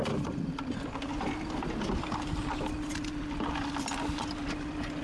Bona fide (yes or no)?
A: yes